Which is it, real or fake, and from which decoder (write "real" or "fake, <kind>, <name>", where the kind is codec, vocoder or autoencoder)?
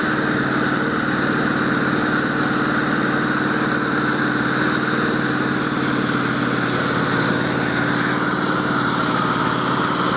real